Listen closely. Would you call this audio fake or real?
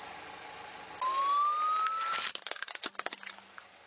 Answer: real